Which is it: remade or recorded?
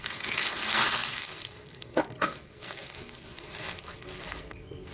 remade